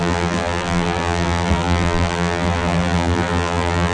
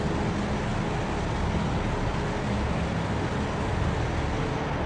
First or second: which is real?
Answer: second